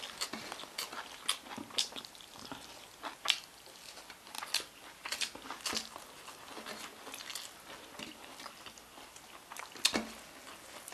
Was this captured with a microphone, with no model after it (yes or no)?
yes